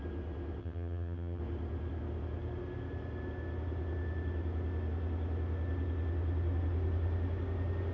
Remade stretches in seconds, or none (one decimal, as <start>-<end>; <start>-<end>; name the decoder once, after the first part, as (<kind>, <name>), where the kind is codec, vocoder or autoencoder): 0.6-1.4 (vocoder, HiFi-GAN)